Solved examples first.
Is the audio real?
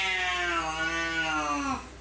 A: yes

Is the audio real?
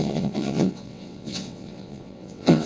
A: no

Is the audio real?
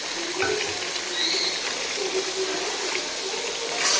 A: yes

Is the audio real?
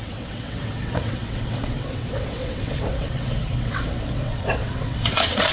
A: no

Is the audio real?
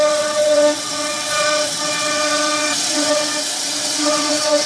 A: no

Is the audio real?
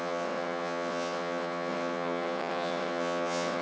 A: no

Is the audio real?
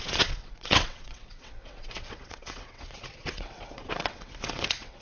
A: no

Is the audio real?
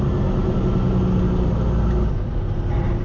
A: yes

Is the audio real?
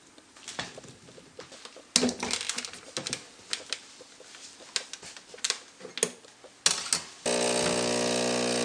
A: yes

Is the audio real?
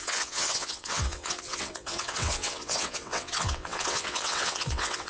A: no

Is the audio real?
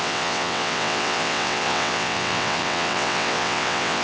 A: no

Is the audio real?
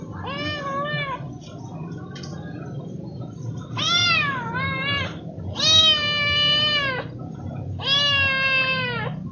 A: yes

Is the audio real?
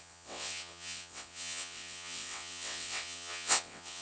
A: no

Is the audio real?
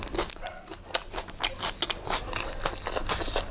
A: yes